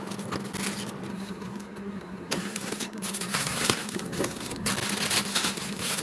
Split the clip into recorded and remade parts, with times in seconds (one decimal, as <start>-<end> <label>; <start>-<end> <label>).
0.0-1.1 recorded; 1.1-4.7 remade; 4.7-5.3 recorded; 5.3-6.0 remade

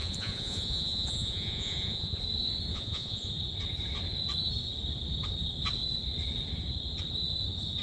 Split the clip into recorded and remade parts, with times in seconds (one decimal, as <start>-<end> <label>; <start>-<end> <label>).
0.0-2.2 remade; 2.2-2.7 recorded; 2.7-3.3 remade; 3.3-7.8 recorded

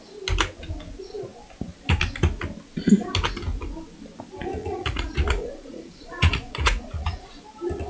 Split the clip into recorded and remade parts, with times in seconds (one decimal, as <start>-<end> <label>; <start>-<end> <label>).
0.0-4.6 recorded; 4.6-7.4 remade; 7.4-7.9 recorded

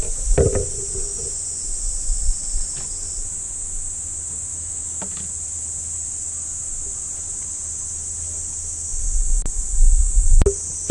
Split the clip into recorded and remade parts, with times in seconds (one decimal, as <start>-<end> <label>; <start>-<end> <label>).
0.0-4.5 recorded; 4.5-5.0 remade; 5.0-10.9 recorded

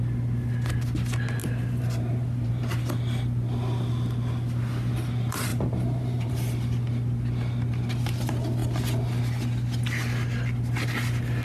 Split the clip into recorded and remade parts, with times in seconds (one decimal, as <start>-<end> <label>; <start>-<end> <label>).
0.0-1.4 recorded; 1.4-2.9 remade; 2.9-5.5 recorded; 5.5-6.3 remade; 6.3-11.4 recorded

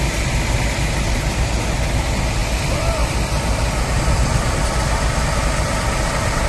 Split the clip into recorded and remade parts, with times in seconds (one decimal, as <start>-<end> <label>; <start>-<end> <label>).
0.0-2.4 recorded; 2.4-5.4 remade; 5.4-6.5 recorded

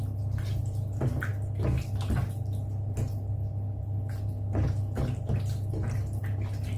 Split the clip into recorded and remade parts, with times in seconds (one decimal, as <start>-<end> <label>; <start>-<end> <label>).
0.0-6.8 recorded